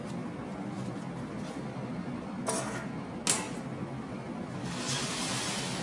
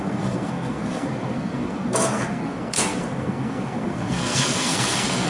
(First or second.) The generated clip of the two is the second